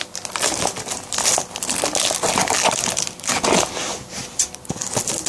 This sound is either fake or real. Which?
real